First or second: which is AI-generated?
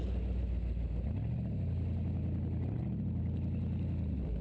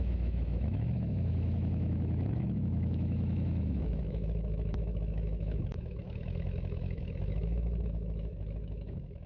second